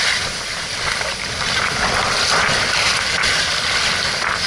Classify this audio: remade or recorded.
remade